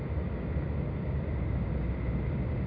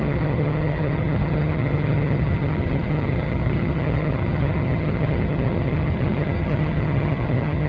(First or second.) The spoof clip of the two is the second